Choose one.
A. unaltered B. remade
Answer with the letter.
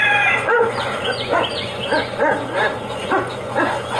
B